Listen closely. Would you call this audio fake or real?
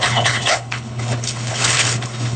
fake